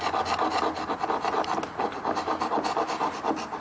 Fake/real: real